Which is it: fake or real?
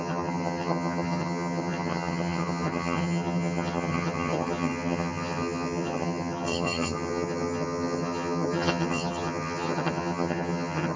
fake